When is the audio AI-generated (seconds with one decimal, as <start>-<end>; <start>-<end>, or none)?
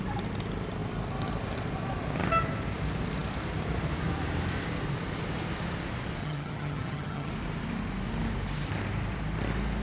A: 6.2-7.3